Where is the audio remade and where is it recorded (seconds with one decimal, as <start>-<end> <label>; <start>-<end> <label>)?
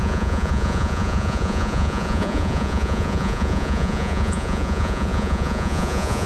0.0-6.3 remade